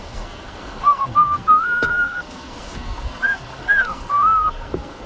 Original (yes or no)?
no